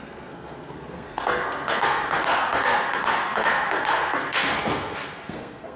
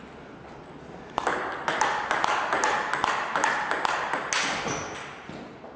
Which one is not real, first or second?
first